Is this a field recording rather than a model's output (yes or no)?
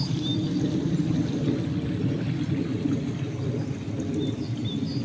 yes